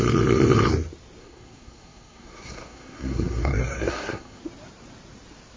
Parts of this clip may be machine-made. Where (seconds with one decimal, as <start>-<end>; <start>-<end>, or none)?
1.2-4.4